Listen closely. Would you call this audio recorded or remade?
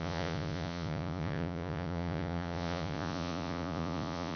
remade